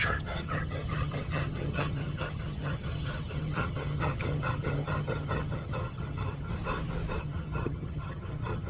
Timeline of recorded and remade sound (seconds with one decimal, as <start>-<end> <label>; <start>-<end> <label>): 0.0-6.5 remade; 6.5-7.2 recorded; 7.2-8.7 remade